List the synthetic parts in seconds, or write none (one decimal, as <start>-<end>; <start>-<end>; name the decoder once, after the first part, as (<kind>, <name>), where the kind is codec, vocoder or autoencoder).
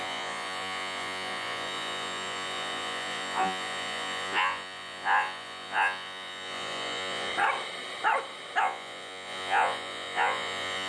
0.0-7.3 (vocoder, Vocos); 8.6-10.9